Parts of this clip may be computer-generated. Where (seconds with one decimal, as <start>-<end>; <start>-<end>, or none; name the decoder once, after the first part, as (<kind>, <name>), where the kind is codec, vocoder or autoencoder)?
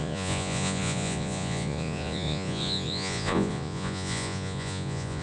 0.0-5.2 (vocoder, Vocos)